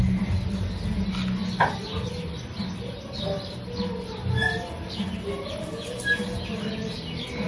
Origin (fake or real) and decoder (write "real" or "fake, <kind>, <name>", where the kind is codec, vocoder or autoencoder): real